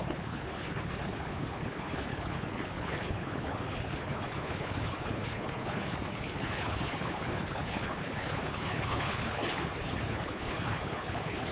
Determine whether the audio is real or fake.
fake